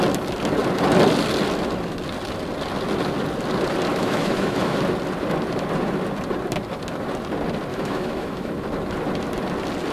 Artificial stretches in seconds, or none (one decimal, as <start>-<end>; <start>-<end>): 3.9-4.8; 7.7-8.5